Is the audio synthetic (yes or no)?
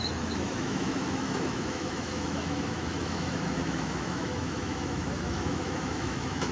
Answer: yes